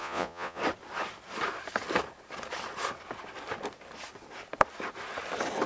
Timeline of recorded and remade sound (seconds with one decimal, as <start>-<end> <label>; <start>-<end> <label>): 0.0-0.6 remade; 0.6-5.7 recorded